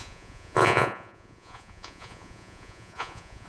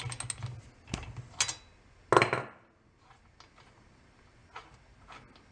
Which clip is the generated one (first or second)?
first